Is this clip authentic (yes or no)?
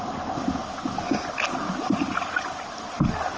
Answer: yes